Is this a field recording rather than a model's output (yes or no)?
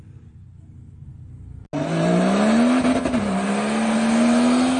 yes